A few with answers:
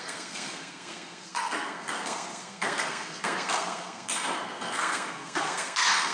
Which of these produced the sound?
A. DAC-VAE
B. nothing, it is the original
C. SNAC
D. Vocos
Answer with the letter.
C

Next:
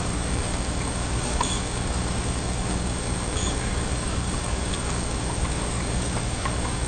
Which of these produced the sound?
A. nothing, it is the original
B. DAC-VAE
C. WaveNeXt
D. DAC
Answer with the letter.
D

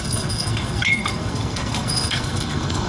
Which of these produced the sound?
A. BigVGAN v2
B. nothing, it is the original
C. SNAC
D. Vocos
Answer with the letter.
C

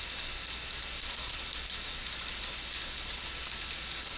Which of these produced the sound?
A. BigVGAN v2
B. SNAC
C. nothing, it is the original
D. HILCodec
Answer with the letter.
C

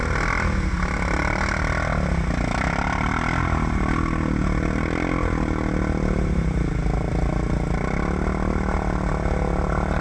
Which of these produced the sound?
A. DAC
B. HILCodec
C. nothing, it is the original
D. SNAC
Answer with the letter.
C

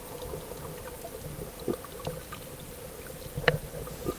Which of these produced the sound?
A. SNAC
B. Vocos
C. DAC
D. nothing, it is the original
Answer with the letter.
D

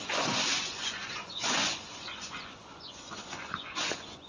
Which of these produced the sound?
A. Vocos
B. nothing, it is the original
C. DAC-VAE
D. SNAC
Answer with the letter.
A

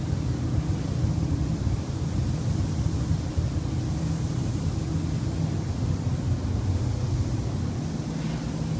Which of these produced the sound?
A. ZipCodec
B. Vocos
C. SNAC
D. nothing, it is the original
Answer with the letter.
D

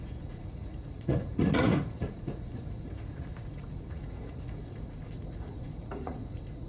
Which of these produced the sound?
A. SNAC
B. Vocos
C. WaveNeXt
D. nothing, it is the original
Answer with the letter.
B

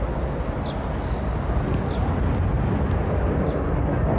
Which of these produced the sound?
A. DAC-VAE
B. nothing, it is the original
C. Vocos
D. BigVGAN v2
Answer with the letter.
B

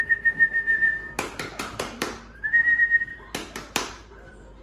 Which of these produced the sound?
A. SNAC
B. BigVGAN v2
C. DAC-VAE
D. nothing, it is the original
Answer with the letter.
B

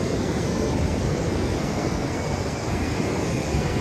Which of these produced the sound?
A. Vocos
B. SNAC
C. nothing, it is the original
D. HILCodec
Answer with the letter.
B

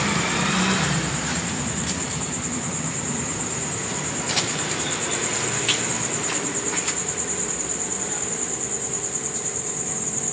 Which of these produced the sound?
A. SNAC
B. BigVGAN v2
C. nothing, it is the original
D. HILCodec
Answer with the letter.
B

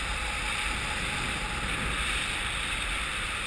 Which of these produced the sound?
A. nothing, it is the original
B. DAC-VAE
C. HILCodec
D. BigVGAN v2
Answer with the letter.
A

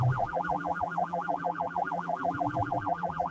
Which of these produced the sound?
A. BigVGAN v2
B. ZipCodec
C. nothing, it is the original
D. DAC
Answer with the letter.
A